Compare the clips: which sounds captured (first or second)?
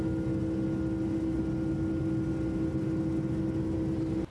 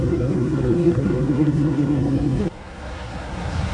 first